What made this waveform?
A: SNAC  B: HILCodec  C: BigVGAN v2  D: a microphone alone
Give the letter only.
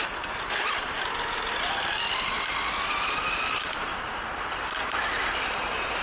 D